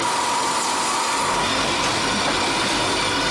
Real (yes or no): yes